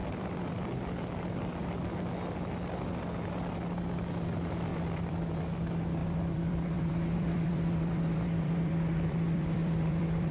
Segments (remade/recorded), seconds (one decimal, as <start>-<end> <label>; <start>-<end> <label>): 0.0-0.8 remade; 0.8-4.7 recorded; 4.7-5.5 remade; 5.5-6.0 recorded; 6.0-10.3 remade